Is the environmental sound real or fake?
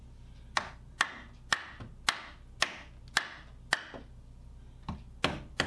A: real